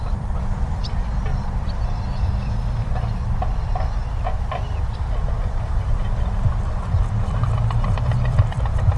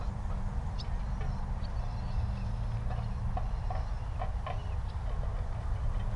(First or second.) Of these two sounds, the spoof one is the first